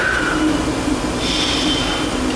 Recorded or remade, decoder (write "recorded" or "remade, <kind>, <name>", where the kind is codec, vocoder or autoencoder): recorded